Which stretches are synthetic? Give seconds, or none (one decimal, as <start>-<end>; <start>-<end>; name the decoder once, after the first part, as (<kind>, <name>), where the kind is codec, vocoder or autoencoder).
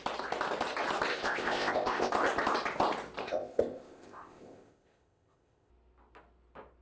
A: 1.1-2.1 (codec, ZipCodec); 3.2-5.7